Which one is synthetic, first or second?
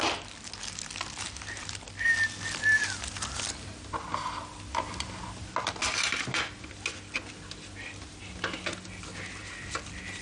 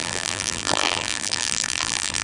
second